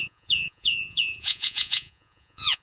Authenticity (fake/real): fake